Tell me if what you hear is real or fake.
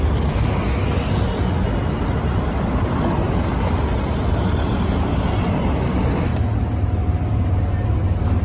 real